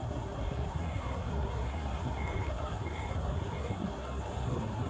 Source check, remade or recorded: remade